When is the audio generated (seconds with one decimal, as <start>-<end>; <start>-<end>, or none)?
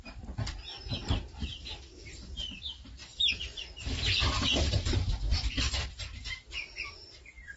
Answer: 0.0-7.6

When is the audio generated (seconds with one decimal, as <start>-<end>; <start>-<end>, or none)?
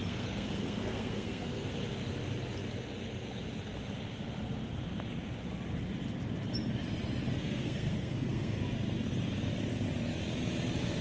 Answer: 0.0-1.7; 7.4-8.6